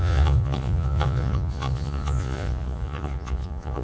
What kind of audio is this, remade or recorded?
remade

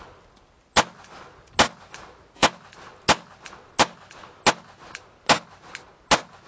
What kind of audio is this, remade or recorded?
recorded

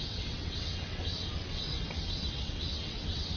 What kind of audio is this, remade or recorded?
remade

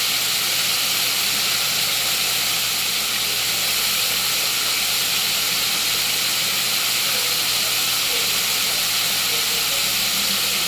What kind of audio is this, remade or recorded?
recorded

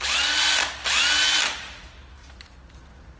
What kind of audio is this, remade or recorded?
recorded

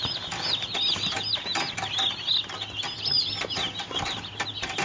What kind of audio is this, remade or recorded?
recorded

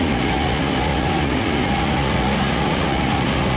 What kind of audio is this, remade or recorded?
remade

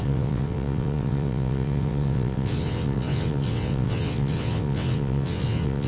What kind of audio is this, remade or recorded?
remade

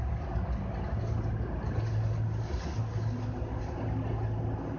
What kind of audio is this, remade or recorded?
recorded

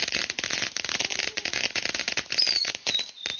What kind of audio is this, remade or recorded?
remade